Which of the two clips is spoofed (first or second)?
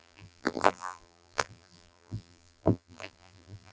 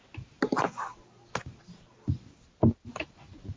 first